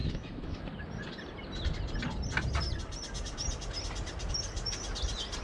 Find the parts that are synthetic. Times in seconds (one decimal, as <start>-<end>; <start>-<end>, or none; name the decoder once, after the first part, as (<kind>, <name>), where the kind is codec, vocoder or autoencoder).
0.0-0.6 (autoencoder, DAC-VAE)